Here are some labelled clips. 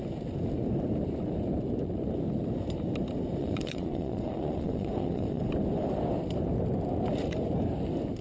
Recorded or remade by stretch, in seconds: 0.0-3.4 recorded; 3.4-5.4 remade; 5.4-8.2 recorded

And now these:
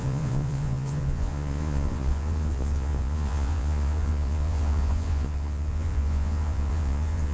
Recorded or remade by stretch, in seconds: 0.0-7.3 remade